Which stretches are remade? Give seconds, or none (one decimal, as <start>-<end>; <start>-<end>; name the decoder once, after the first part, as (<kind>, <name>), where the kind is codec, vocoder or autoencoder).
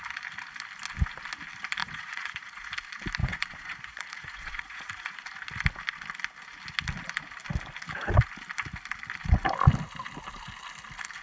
1.8-2.8 (vocoder, Vocos); 3.2-5.2